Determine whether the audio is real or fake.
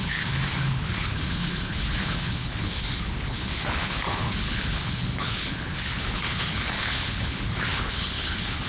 fake